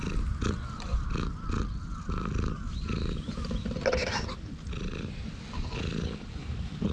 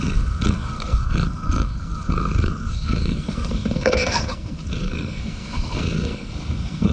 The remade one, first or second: second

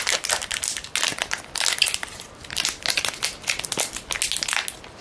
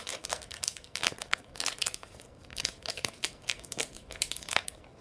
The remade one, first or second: second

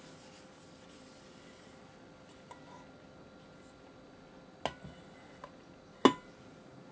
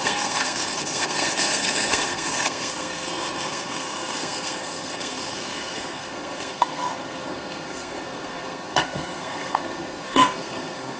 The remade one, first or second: second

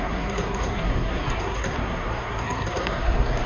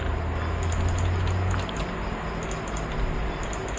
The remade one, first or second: first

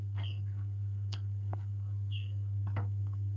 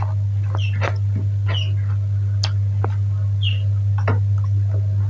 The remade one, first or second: first